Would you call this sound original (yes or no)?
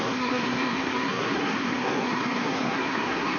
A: no